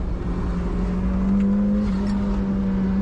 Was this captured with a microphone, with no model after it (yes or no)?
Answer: yes